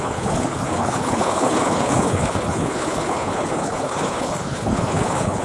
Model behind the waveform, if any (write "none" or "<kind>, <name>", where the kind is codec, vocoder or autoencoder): codec, HILCodec